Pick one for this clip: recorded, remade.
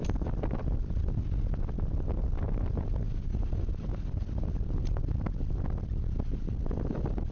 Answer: recorded